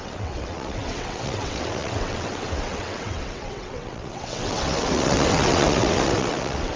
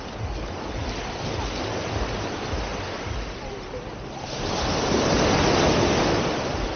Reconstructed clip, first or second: first